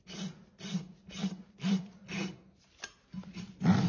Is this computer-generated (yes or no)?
no